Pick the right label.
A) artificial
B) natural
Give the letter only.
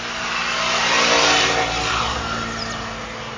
B